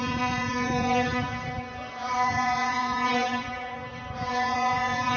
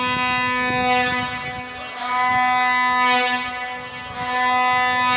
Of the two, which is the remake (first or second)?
first